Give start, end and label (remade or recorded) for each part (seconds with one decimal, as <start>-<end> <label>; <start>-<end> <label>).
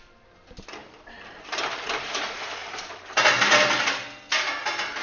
0.0-0.8 recorded; 0.8-3.8 remade; 3.8-5.0 recorded